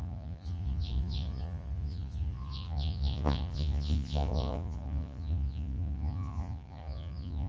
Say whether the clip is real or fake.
fake